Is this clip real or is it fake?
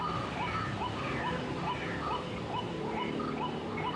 real